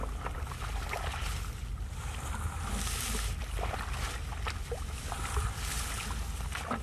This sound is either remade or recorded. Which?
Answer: recorded